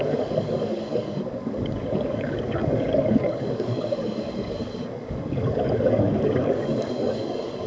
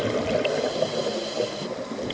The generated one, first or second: first